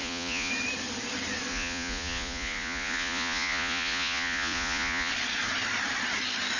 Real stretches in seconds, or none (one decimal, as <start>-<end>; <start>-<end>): 0.5-1.5; 5.1-6.6